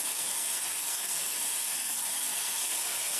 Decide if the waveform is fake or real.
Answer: fake